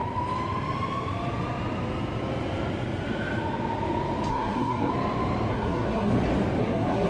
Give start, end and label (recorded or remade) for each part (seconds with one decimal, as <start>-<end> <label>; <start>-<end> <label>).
0.0-4.3 recorded; 4.3-4.9 remade; 4.9-5.5 recorded; 5.5-6.1 remade; 6.1-6.6 recorded; 6.6-7.1 remade